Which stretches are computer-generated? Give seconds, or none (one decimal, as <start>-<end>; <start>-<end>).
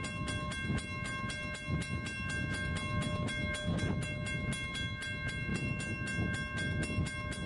none